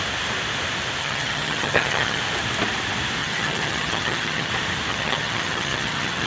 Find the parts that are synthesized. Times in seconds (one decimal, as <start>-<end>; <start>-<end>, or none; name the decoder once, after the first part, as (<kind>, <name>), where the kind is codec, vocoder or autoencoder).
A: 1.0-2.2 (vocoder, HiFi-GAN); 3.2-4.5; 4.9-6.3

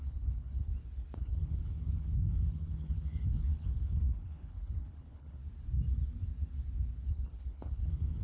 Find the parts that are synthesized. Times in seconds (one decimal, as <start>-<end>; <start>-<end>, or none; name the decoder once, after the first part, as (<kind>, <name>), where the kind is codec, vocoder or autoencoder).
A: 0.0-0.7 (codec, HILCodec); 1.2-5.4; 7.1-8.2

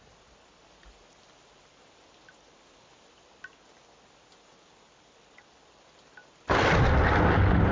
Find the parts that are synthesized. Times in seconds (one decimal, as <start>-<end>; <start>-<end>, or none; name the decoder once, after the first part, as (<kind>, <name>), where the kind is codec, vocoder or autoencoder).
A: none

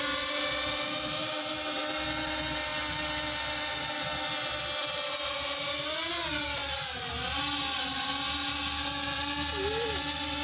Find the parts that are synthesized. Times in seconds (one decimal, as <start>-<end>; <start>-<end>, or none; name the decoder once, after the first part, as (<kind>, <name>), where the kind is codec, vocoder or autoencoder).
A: 1.2-1.8 (vocoder, BigVGAN v2); 4.8-6.1

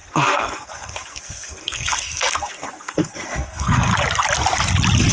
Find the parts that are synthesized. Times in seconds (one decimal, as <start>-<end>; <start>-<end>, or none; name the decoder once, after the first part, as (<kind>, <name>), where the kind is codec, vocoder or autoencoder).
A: 0.0-3.9 (codec, SNAC)